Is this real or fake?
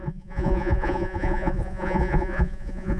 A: fake